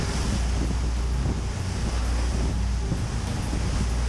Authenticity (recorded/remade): recorded